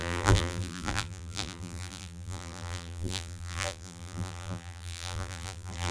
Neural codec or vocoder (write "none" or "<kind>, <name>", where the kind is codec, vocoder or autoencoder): vocoder, BigVGAN v2